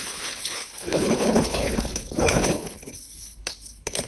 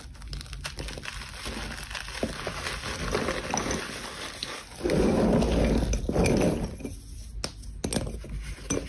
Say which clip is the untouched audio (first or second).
second